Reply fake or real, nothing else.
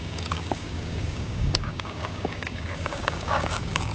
fake